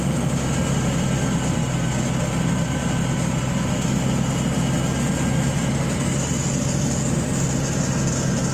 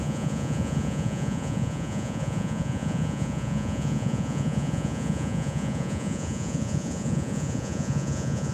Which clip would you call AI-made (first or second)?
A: second